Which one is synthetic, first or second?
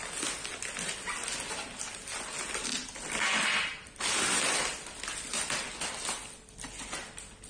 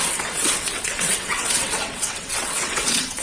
second